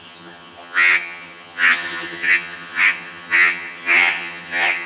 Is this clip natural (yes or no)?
no